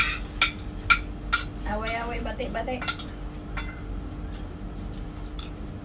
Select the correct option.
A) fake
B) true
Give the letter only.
B